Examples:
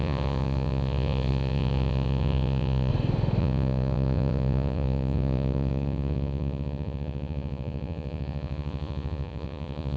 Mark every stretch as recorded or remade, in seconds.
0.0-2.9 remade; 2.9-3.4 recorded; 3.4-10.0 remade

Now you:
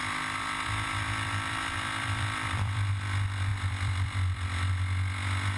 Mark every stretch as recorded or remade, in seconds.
0.0-3.0 remade; 3.0-3.5 recorded; 3.5-4.7 remade; 4.7-5.6 recorded

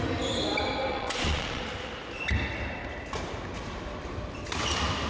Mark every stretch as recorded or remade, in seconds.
0.0-0.9 recorded; 0.9-1.6 remade; 1.6-5.1 recorded

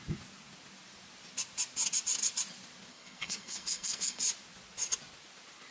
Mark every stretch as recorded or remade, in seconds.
0.0-2.9 recorded; 2.9-4.2 remade; 4.2-5.7 recorded